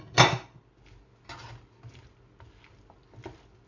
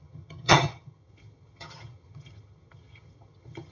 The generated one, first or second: second